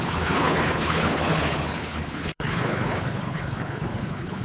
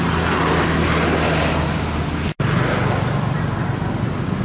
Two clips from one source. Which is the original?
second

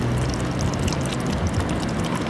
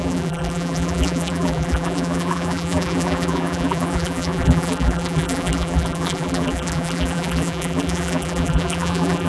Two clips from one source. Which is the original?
first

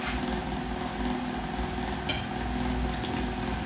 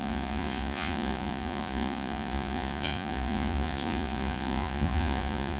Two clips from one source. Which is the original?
first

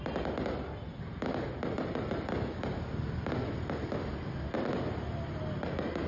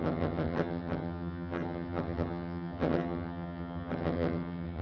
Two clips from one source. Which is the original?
first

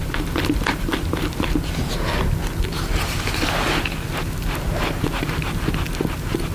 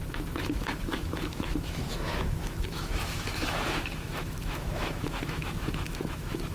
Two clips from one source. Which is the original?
first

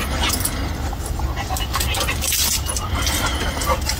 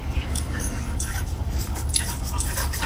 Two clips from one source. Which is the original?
first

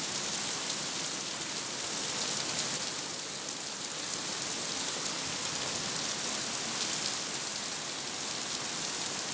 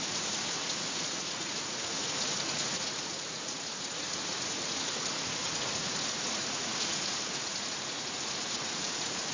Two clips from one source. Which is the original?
first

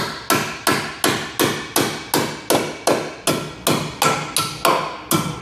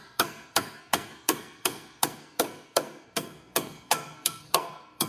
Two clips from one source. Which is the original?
first